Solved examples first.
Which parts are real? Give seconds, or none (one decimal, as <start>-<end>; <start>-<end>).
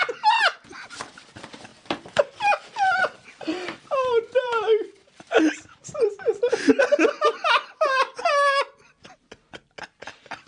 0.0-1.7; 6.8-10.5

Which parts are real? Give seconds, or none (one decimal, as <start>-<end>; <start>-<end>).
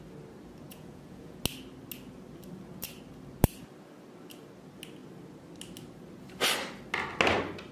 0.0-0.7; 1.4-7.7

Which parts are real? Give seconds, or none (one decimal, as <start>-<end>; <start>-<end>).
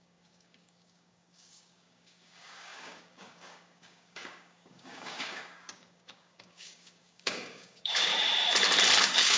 8.1-9.0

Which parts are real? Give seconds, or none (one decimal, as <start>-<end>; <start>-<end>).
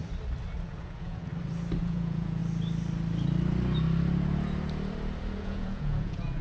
0.0-0.6; 1.3-1.8; 2.4-5.4